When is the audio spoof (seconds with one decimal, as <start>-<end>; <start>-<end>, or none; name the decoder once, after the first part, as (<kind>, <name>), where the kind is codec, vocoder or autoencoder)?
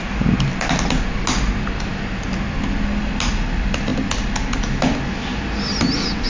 none